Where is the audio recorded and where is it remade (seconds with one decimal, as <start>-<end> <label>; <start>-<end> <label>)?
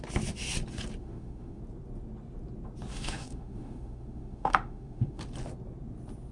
0.0-1.0 recorded; 1.0-1.6 remade; 1.6-2.9 recorded; 2.9-5.2 remade; 5.2-6.3 recorded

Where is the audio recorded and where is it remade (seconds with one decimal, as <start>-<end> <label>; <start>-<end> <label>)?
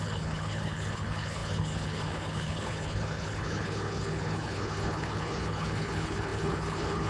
0.0-7.1 remade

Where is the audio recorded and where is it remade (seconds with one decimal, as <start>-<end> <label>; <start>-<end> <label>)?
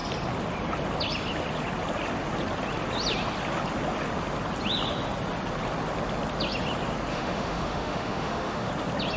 0.0-7.1 recorded; 7.1-8.7 remade; 8.7-9.2 recorded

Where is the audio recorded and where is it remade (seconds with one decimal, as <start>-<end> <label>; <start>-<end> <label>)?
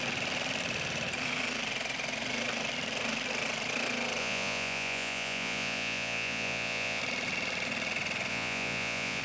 0.0-4.2 recorded; 4.2-7.0 remade; 7.0-8.3 recorded; 8.3-9.2 remade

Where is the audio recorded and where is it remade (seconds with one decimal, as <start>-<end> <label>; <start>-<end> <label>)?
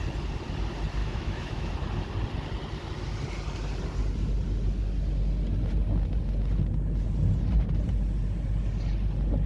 0.0-1.0 recorded; 1.0-1.7 remade; 1.7-9.5 recorded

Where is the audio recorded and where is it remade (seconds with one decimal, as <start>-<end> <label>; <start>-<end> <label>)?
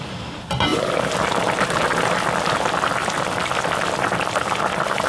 0.0-0.7 remade; 0.7-2.5 recorded; 2.5-5.1 remade